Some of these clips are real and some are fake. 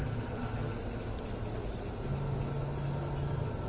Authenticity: real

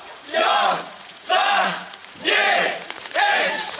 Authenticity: fake